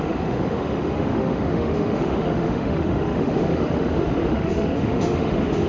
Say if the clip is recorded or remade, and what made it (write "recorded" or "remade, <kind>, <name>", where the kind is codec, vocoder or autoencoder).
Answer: remade, autoencoder, DAC-VAE